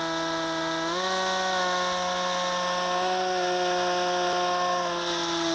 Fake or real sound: real